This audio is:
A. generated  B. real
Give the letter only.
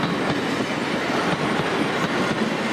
B